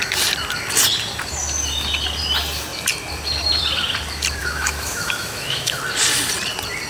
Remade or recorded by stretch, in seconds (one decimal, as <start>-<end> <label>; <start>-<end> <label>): 0.0-4.4 recorded; 4.4-5.8 remade; 5.8-6.9 recorded